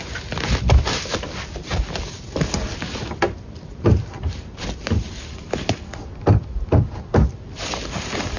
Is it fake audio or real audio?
real